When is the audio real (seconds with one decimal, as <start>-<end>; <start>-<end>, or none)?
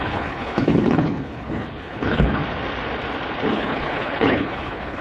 2.4-3.5